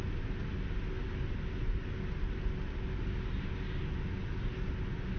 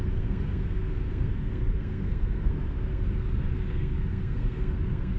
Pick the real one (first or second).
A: first